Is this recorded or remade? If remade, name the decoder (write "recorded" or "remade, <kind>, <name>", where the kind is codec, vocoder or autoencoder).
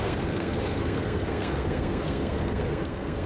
remade, codec, SNAC